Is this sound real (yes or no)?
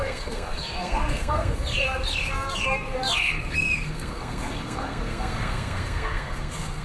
no